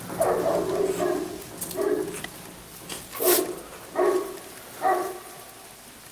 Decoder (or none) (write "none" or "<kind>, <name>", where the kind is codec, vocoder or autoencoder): none